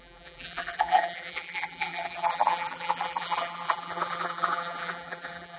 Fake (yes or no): yes